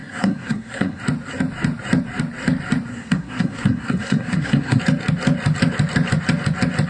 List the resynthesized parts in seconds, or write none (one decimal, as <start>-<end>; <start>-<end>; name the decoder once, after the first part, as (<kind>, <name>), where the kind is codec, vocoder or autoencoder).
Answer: 0.0-1.0 (codec, SNAC); 2.9-4.8